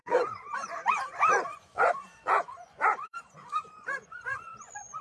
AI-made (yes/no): yes